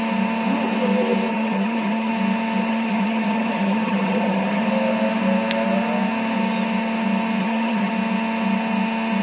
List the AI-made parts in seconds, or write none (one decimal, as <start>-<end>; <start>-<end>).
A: 1.3-2.1; 2.7-4.6; 7.4-7.9